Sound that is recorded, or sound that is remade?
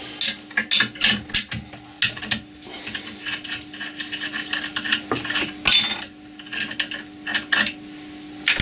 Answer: recorded